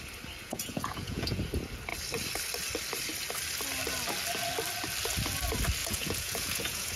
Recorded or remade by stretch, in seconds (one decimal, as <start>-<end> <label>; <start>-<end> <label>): 0.0-0.4 recorded; 0.4-1.4 remade; 1.4-5.8 recorded; 5.8-7.0 remade